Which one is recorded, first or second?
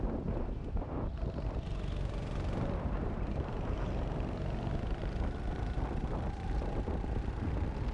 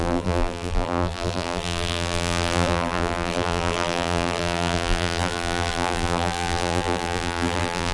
first